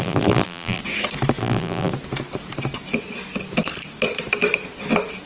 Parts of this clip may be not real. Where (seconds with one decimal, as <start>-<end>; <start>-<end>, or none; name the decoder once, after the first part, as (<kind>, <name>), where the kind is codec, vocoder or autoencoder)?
0.0-0.8 (vocoder, BigVGAN v2); 1.4-1.9